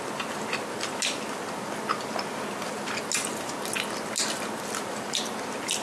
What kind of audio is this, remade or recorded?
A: recorded